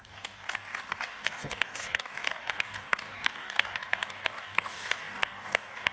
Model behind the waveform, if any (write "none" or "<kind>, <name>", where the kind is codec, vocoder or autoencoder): codec, DAC